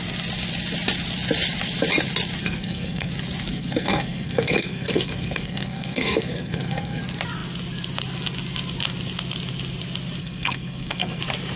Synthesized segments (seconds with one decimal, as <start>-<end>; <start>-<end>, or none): 2.4-3.1; 3.5-7.0; 10.2-11.2